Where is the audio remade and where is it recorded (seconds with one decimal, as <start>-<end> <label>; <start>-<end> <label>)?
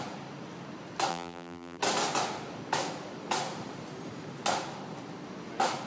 0.0-1.1 recorded; 1.1-1.8 remade; 1.8-5.9 recorded